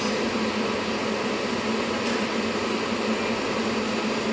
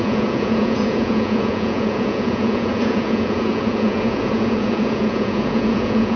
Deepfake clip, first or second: second